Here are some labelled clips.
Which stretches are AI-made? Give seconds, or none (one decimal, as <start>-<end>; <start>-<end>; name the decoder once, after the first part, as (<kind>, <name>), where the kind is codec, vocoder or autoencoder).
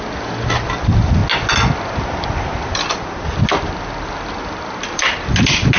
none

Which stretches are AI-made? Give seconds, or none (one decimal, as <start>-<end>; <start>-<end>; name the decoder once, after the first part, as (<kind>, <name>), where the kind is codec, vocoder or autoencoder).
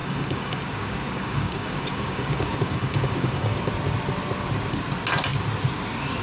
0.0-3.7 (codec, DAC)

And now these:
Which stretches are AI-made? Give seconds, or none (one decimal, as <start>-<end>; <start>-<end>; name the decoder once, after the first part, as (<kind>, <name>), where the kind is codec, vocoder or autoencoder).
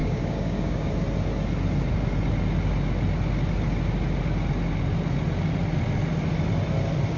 0.0-0.9 (codec, DAC)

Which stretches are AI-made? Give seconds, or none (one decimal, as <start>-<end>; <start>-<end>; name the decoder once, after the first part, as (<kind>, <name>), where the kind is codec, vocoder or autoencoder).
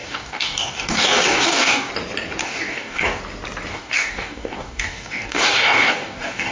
0.0-1.9 (codec, DAC); 2.4-3.2; 3.7-6.5